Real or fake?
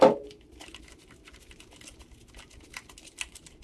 real